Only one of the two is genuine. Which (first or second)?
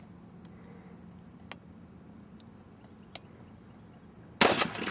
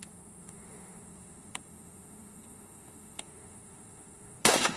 first